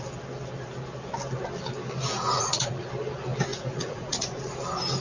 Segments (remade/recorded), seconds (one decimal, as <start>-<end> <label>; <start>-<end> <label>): 0.0-2.1 recorded; 2.1-2.9 remade; 2.9-3.5 recorded; 3.5-4.4 remade; 4.4-5.0 recorded